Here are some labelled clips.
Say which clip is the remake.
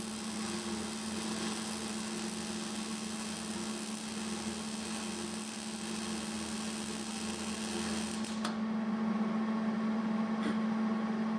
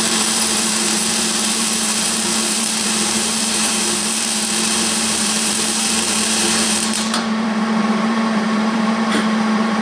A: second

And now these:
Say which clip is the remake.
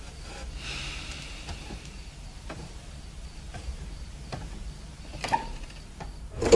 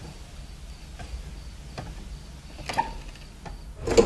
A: first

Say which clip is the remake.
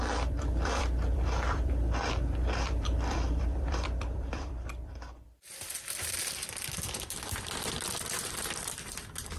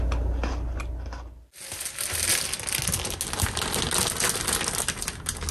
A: first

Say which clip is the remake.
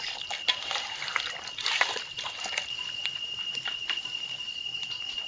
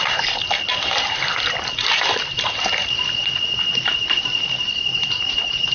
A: first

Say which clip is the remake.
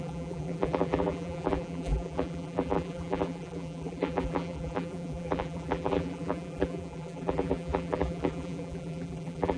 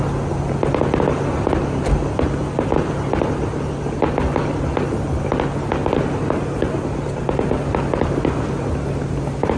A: first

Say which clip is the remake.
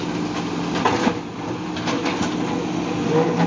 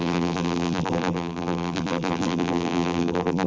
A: second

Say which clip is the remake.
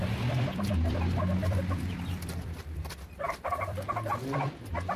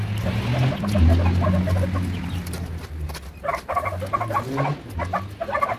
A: first